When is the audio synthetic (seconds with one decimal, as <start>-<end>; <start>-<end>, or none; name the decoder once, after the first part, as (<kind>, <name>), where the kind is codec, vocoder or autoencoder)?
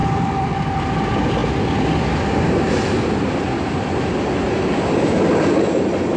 0.0-0.9 (vocoder, BigVGAN v2)